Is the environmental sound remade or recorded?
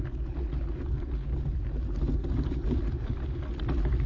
recorded